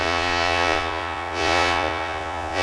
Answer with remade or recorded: remade